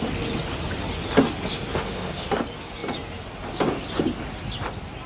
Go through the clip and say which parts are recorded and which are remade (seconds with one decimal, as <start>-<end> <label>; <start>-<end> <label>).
0.0-1.7 recorded; 1.7-2.3 remade; 2.3-5.1 recorded